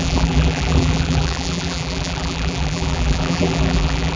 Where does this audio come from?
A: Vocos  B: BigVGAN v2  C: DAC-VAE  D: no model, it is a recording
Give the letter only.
B